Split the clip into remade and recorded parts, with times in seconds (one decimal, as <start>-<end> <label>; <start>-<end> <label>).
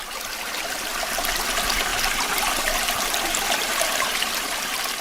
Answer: 0.0-5.0 remade